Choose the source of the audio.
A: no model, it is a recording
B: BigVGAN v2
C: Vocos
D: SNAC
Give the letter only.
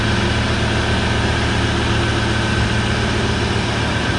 A